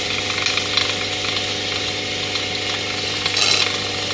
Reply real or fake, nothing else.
real